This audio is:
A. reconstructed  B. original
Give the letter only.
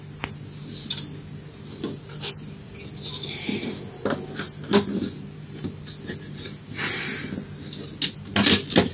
B